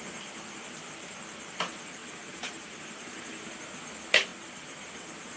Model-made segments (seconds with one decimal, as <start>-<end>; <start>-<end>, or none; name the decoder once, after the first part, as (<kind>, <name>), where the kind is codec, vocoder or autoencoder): 2.0-3.6 (vocoder, BigVGAN v2); 4.3-5.4